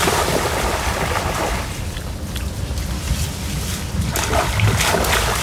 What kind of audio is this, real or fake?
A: fake